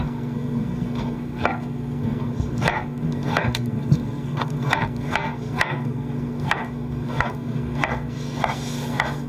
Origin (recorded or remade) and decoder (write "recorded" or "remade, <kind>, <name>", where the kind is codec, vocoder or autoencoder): remade, codec, SNAC